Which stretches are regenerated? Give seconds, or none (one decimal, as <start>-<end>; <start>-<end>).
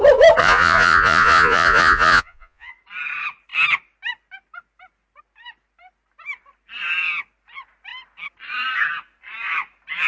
0.4-2.7